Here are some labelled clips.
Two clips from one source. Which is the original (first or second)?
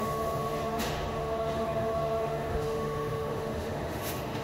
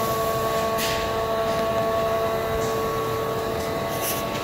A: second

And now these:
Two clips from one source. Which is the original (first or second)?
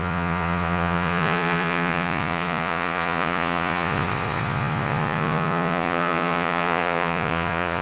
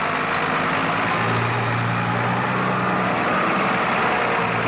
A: second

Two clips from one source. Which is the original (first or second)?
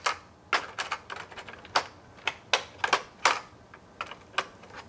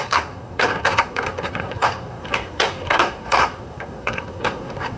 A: first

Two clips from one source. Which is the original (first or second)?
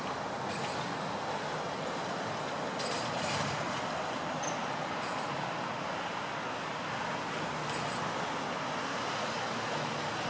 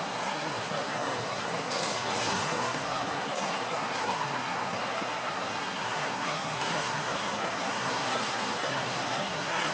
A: first